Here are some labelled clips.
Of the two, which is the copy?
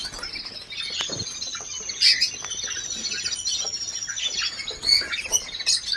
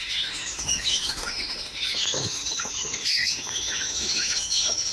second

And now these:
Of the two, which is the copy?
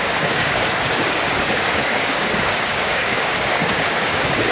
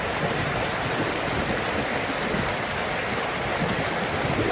first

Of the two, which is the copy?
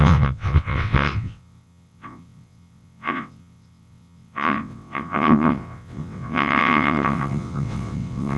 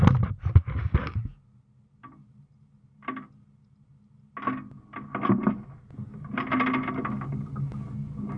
first